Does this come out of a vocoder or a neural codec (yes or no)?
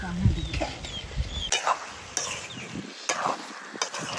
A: no